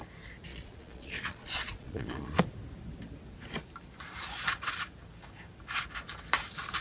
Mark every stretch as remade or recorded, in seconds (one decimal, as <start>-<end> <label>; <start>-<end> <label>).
0.0-0.5 recorded; 0.5-2.4 remade; 2.4-6.8 recorded